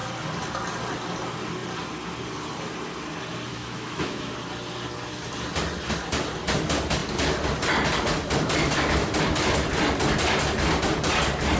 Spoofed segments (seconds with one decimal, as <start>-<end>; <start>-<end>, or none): 3.5-4.3